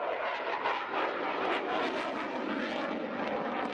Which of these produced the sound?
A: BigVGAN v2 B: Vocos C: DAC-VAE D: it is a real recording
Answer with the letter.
D